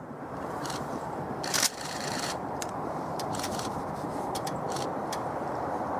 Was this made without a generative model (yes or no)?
no